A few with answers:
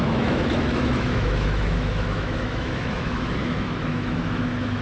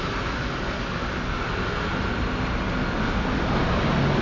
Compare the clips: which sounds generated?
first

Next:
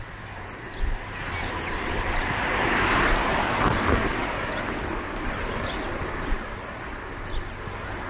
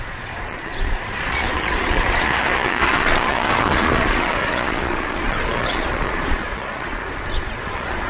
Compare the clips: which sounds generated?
second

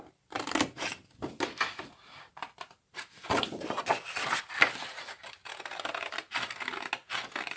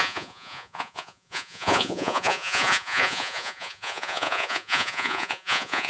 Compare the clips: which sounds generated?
second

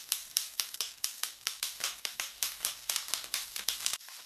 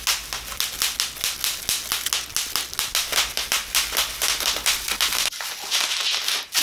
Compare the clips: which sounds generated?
first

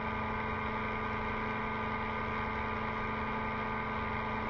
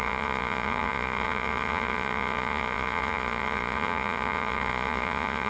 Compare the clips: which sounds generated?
second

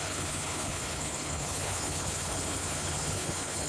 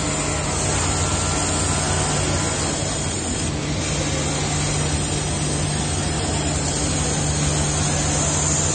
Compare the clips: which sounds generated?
first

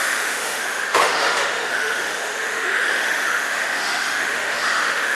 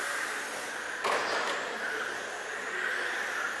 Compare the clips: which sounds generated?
first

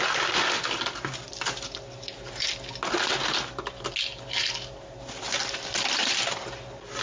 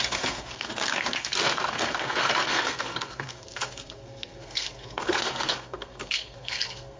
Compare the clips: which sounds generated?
second